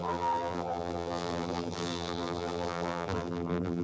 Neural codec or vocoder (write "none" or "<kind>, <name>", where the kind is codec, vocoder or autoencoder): vocoder, BigVGAN v2